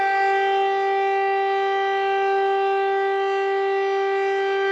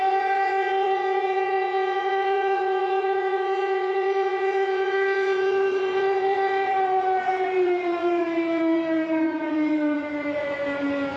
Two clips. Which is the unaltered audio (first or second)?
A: first